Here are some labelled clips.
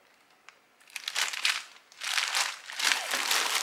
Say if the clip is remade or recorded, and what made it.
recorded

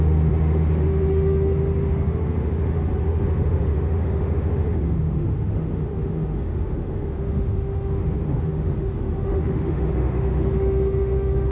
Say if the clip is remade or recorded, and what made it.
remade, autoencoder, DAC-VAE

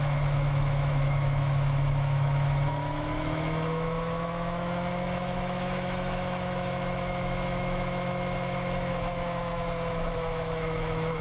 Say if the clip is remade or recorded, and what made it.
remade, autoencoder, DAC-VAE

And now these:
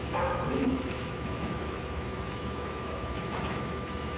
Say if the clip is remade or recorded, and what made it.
remade, autoencoder, DAC-VAE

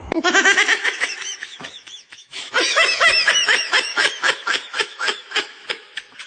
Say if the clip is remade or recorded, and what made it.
remade, autoencoder, DAC-VAE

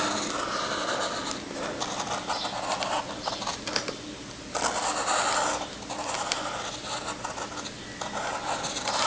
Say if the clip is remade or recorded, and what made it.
recorded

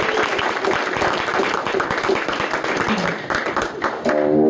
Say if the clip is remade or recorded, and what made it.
recorded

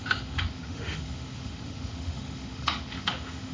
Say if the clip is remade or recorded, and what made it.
remade, autoencoder, DAC-VAE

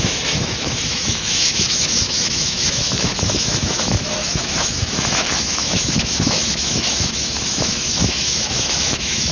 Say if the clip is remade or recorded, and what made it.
remade, autoencoder, DAC-VAE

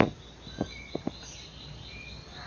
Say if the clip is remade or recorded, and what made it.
recorded